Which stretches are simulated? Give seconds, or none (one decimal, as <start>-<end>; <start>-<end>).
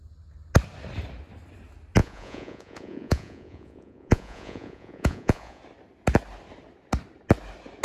2.0-5.6